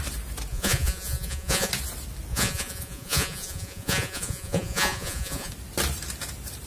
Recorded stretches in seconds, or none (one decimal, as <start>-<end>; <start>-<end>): 0.0-0.5; 1.7-2.3; 5.5-6.7